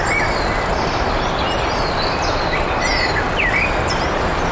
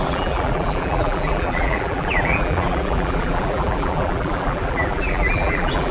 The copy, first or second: second